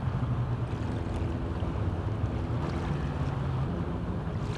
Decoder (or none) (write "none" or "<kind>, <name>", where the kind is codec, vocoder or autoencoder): none